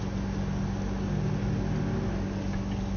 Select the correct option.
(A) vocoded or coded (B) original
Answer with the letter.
B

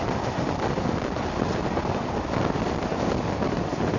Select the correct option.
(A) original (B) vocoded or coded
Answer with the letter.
A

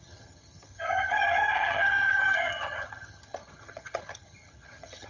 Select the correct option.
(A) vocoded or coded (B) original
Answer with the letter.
A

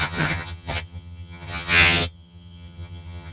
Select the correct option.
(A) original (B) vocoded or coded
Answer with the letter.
B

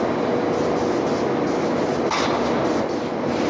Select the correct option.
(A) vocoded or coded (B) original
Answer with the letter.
B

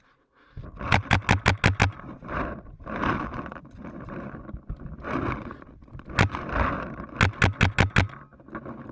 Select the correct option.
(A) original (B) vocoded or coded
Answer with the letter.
A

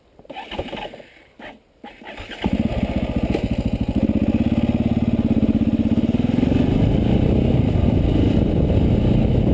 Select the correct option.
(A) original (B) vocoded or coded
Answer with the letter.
A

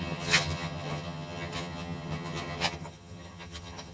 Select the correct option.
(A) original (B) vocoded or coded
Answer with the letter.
B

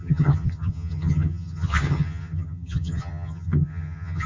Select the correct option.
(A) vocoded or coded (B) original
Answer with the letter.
A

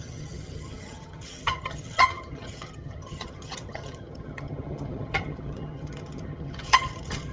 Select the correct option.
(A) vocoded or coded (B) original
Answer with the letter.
A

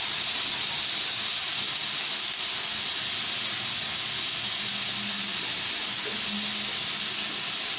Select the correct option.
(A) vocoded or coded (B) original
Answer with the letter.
B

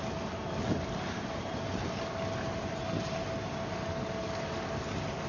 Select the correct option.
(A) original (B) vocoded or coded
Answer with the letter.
A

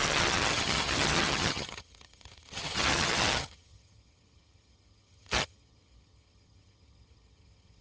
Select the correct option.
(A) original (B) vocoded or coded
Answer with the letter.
B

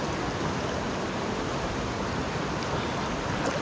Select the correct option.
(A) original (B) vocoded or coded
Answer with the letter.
A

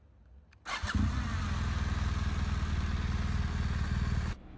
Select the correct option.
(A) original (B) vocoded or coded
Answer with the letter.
A